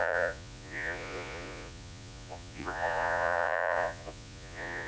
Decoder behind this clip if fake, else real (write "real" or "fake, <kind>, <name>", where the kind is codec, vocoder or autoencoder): fake, vocoder, Vocos